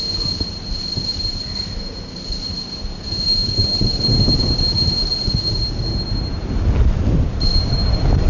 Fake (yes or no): no